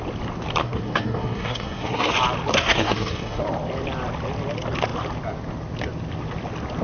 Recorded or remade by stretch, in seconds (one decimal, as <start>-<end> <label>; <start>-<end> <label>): 0.0-0.6 recorded; 0.6-2.1 remade; 2.1-2.5 recorded; 2.5-3.4 remade; 3.4-6.8 recorded